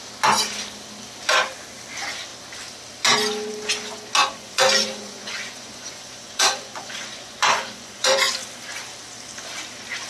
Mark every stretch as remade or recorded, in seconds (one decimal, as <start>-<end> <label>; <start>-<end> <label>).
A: 0.0-4.2 recorded; 4.2-8.3 remade; 8.3-10.1 recorded